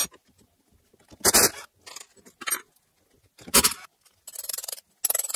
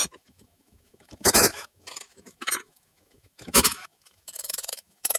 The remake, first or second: second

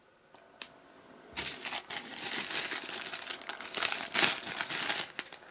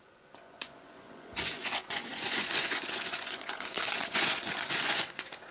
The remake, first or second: second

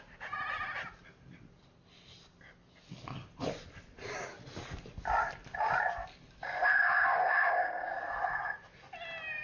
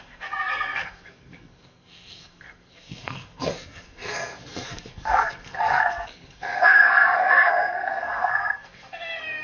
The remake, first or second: second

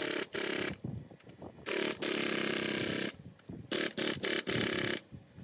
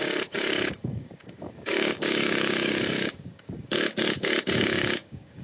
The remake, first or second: second